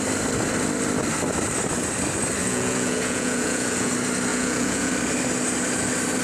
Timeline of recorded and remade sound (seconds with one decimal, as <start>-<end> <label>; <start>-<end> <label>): 0.0-2.4 recorded; 2.4-3.9 remade; 3.9-4.3 recorded; 4.3-4.9 remade; 4.9-6.2 recorded

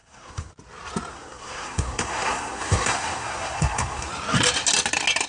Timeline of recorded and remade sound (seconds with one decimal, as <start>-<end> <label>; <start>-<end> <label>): 0.0-0.5 remade; 0.5-1.1 recorded; 1.1-4.1 remade; 4.1-5.3 recorded